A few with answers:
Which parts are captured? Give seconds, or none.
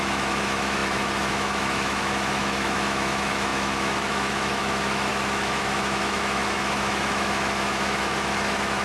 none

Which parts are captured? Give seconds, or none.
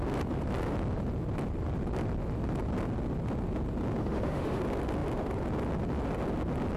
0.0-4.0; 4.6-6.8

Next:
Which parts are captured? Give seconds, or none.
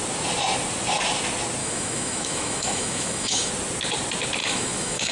0.0-1.6; 3.5-4.4